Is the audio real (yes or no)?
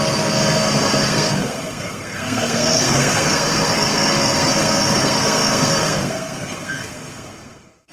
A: no